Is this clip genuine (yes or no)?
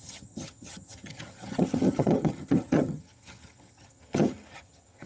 no